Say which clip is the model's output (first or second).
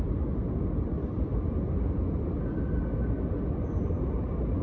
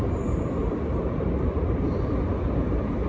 second